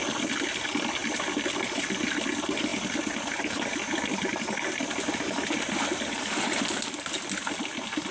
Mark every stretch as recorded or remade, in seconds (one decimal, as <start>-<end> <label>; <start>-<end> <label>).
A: 0.0-8.1 recorded